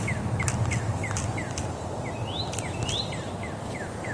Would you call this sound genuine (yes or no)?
yes